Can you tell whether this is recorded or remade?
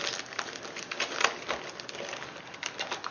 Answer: recorded